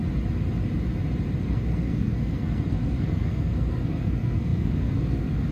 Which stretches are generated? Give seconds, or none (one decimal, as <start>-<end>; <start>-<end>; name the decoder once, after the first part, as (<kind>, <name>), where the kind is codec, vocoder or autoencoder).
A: 1.4-5.5 (codec, SNAC)

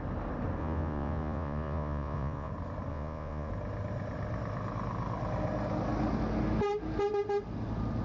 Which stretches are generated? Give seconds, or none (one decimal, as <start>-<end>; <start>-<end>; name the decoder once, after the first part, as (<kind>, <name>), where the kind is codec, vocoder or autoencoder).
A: 0.6-2.5 (vocoder, Vocos); 2.9-3.5

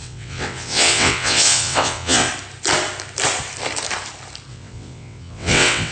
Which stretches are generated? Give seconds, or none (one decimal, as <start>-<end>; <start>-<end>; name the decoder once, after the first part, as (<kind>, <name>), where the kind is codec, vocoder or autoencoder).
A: 0.0-2.3 (vocoder, WaveNeXt); 4.5-5.9

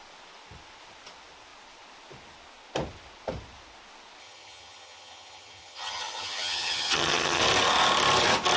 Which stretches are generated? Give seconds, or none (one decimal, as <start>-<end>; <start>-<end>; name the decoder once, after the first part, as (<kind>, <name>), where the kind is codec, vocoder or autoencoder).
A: 4.2-7.4 (vocoder, HiFi-GAN)

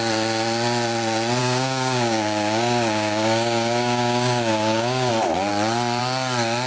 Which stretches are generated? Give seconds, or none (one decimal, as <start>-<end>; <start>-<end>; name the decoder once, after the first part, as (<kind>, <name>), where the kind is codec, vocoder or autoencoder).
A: 1.4-5.1 (codec, DAC)